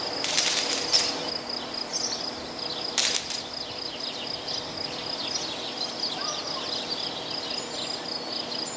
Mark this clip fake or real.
real